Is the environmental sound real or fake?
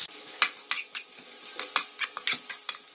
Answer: real